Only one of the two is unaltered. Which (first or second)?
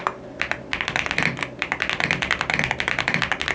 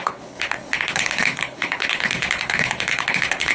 first